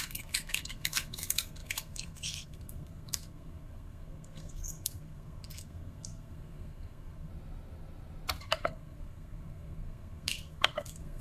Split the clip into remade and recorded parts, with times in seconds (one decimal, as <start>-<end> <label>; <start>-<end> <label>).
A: 0.0-7.3 remade; 7.3-8.4 recorded; 8.4-11.2 remade